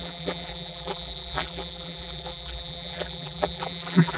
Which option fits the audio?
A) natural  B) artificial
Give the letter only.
B